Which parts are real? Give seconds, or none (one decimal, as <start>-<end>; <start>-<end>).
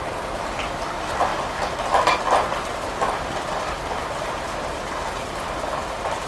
0.0-6.3